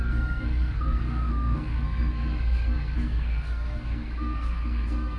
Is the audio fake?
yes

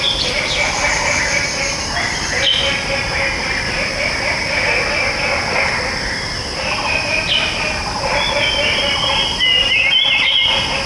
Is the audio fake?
no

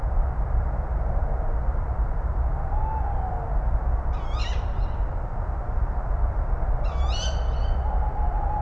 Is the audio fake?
no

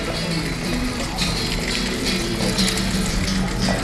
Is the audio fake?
no